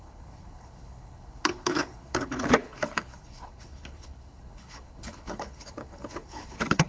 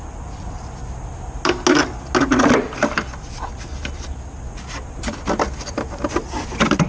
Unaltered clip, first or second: second